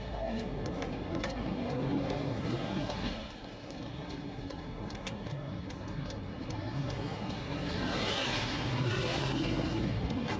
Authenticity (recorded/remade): remade